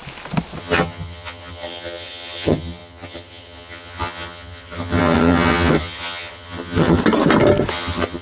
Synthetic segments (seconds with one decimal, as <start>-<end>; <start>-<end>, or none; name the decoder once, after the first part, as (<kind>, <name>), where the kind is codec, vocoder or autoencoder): 0.6-7.0 (vocoder, HiFi-GAN); 7.7-8.2